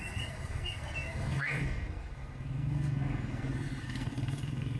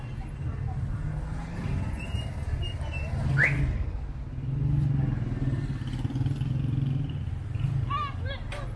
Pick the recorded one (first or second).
second